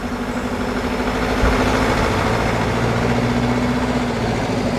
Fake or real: real